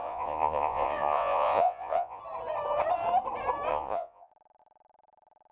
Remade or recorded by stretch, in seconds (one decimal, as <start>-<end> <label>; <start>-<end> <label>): 0.0-2.2 remade; 2.2-3.7 recorded; 3.7-4.3 remade; 4.3-5.5 recorded